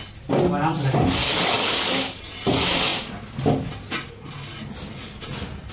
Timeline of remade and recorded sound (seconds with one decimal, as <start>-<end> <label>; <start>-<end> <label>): 0.0-1.2 recorded; 1.2-2.2 remade; 2.2-5.7 recorded